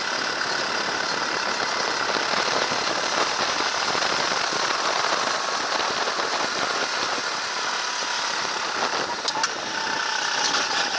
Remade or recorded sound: recorded